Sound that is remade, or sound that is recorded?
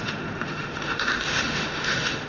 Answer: remade